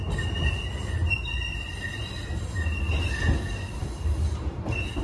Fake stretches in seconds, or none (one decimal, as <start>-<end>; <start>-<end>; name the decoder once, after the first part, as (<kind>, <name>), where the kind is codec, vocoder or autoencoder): none